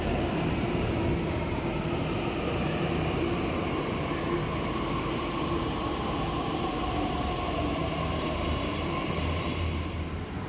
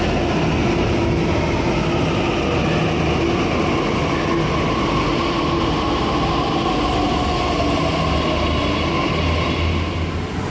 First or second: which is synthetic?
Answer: first